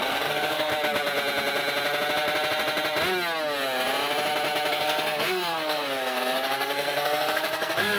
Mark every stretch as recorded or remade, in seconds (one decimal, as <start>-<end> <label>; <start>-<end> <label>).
0.0-0.7 remade; 0.7-4.7 recorded; 4.7-8.0 remade